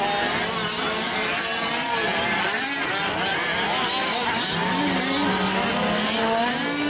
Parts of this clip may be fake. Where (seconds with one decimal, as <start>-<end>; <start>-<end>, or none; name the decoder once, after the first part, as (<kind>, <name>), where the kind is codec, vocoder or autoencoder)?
none